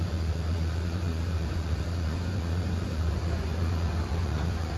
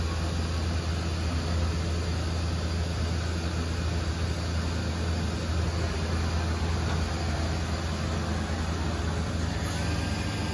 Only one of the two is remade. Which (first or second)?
first